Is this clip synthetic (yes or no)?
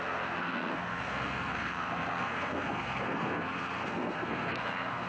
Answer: yes